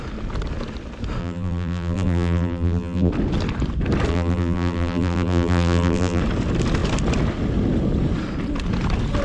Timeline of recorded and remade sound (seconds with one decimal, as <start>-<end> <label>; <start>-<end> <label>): 0.0-1.2 recorded; 1.2-3.1 remade; 3.1-4.1 recorded; 4.1-6.2 remade; 6.2-9.2 recorded